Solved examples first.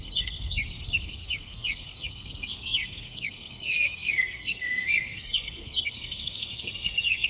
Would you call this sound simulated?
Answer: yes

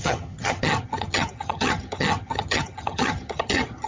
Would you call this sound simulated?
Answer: yes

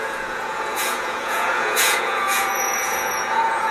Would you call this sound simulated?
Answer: yes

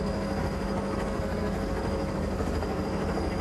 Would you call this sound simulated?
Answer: yes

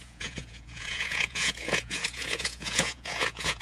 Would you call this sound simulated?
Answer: yes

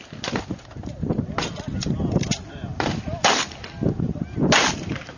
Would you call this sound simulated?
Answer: no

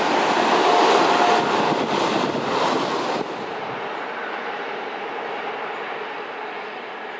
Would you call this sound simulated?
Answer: no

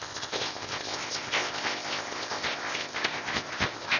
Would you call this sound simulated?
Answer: yes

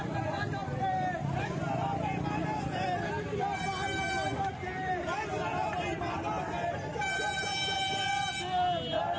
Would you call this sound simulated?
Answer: no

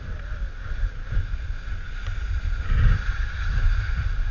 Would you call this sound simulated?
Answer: no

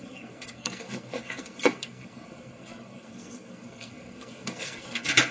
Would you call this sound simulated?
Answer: yes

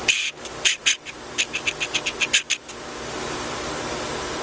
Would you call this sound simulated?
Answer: no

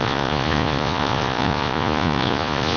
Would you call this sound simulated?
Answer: yes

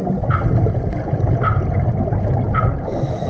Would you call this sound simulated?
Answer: no